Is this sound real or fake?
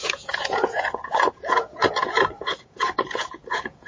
fake